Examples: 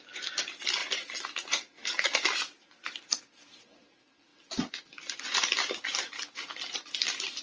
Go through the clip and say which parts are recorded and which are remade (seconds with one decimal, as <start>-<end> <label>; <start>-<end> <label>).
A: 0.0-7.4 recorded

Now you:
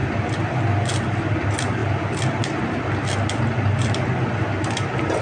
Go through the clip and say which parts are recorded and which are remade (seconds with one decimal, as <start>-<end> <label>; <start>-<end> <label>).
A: 0.0-5.2 recorded

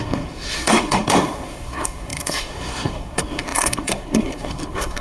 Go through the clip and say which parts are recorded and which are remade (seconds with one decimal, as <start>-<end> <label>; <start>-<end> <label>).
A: 0.0-5.0 remade

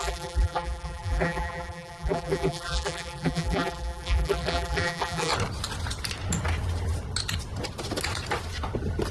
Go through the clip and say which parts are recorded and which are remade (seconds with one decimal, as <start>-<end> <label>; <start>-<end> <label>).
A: 0.0-5.3 remade; 5.3-9.1 recorded

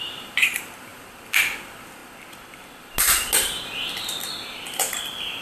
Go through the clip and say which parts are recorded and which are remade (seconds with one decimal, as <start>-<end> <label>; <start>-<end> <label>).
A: 0.0-2.0 remade; 2.0-5.4 recorded